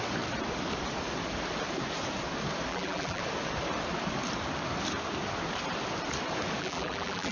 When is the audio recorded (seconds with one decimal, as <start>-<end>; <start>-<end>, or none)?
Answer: 0.0-2.7; 3.2-6.6

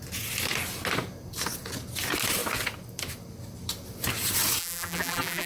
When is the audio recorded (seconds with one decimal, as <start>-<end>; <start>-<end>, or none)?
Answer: 0.0-4.6

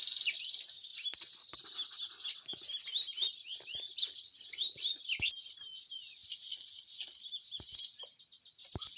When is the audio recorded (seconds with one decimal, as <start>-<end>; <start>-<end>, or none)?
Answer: 0.0-0.9; 5.2-6.2; 6.8-9.0